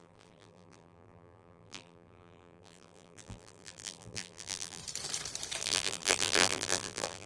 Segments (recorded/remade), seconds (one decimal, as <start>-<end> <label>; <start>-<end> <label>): 0.0-4.8 remade; 4.8-5.6 recorded; 5.6-7.3 remade